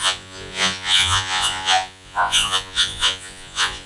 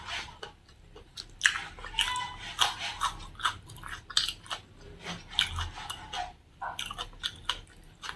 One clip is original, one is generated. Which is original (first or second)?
second